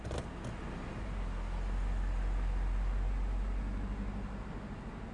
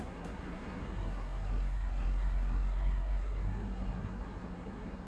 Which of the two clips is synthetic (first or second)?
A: second